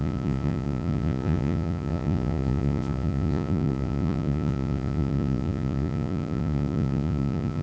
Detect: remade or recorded remade